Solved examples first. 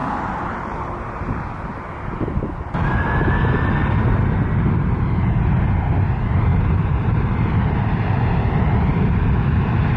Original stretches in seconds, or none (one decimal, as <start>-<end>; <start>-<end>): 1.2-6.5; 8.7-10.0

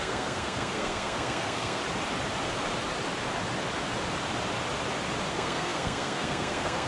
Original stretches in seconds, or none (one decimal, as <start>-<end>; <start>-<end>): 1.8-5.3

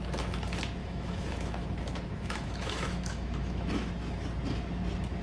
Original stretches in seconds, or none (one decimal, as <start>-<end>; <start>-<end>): 0.0-0.8; 3.9-5.2

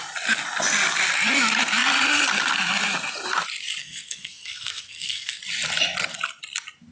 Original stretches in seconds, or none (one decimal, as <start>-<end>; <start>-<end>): 0.0-3.8; 5.4-6.9